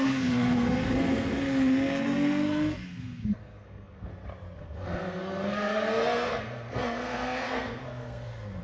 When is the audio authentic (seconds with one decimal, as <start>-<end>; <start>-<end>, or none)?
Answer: 4.1-4.6